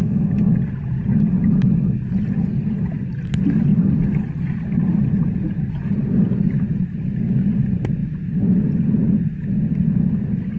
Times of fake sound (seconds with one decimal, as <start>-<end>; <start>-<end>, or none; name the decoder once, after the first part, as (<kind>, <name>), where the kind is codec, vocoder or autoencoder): none